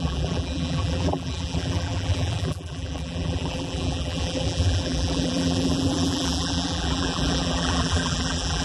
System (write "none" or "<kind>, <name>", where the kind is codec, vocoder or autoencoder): vocoder, BigVGAN v2